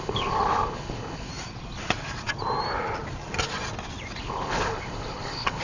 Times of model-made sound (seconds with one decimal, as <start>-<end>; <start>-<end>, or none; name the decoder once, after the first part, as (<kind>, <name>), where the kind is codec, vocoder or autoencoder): 0.0-1.3 (codec, HILCodec); 4.2-5.6